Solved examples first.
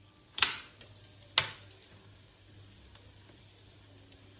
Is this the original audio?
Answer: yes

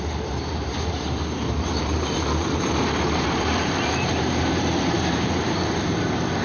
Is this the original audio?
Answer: no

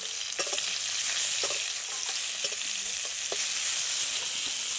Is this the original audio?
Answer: yes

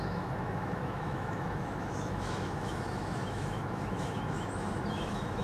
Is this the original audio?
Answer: no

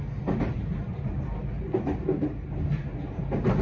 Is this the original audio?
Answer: yes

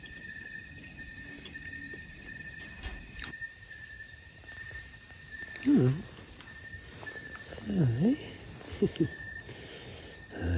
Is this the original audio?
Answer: yes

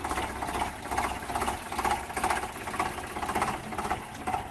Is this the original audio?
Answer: yes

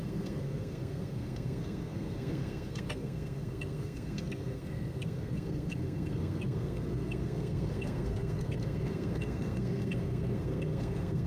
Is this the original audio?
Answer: no